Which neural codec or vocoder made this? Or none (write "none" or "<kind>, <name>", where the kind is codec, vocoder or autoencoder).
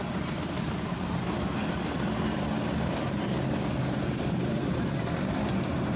none